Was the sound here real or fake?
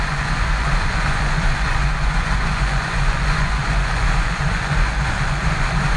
fake